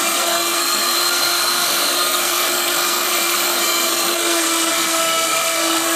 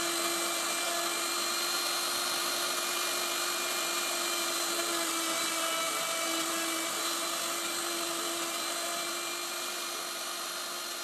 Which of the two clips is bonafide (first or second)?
second